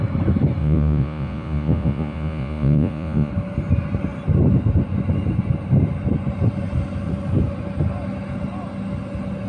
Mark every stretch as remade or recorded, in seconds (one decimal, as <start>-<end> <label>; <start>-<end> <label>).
0.0-0.6 recorded; 0.6-3.3 remade; 3.3-9.5 recorded